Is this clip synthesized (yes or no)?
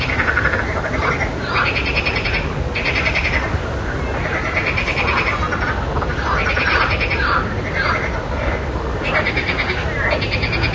no